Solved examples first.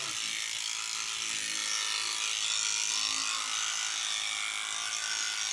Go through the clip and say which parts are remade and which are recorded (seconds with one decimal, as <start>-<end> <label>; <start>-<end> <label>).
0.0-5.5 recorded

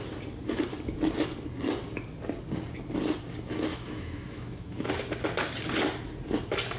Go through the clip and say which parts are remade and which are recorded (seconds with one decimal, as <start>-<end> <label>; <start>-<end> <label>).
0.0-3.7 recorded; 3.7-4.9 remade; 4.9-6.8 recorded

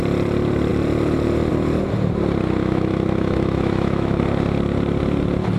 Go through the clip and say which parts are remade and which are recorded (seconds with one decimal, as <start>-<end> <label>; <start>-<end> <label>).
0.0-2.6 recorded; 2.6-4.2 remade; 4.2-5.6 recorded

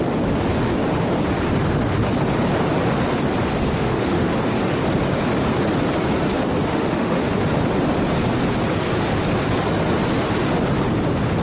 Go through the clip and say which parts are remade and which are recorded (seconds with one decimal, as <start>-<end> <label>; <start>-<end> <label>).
0.0-3.7 recorded; 3.7-4.3 remade; 4.3-6.7 recorded; 6.7-7.3 remade; 7.3-11.4 recorded

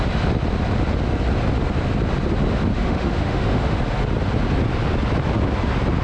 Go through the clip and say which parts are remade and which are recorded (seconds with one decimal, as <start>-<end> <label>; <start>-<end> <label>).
0.0-2.7 recorded; 2.7-3.8 remade; 3.8-6.0 recorded